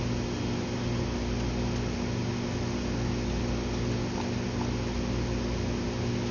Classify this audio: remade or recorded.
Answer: recorded